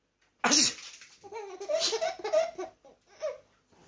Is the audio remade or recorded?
recorded